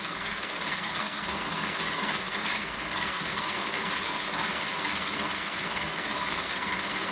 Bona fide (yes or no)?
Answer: no